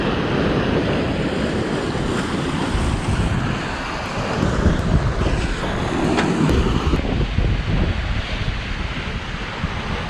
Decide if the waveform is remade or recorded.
recorded